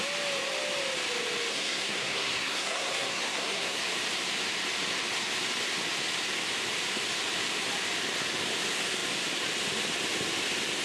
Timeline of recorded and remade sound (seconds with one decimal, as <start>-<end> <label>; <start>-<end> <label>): 0.0-1.5 recorded; 1.5-3.8 remade; 3.8-10.8 recorded